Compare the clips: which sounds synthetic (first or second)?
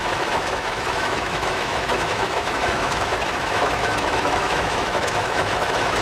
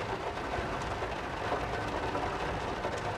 first